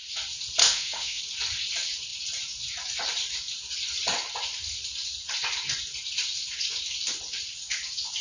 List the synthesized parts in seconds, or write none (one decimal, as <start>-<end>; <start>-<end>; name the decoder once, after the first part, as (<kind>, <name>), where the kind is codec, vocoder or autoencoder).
0.6-1.2 (autoencoder, DAC-VAE)